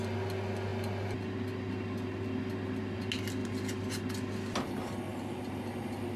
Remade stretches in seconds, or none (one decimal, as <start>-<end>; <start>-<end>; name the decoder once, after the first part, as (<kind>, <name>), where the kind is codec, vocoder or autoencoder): none